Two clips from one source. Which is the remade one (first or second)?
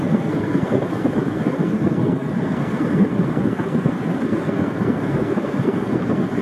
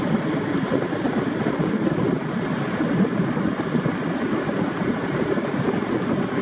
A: first